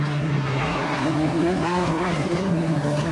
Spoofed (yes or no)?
yes